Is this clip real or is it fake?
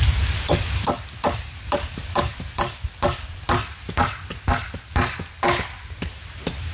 real